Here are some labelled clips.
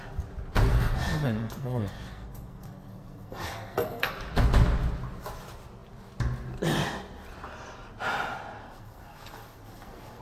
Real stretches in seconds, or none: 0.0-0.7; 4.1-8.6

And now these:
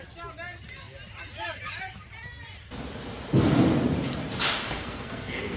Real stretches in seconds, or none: 0.0-4.8